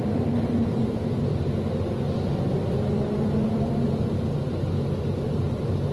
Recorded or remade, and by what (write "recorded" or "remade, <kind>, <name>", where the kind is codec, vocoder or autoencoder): recorded